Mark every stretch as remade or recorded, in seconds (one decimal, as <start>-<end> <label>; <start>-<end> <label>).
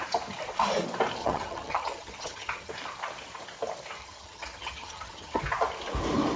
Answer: 0.0-1.2 recorded; 1.2-2.7 remade; 2.7-4.0 recorded; 4.0-5.4 remade; 5.4-6.4 recorded